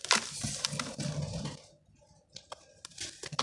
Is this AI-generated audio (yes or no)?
no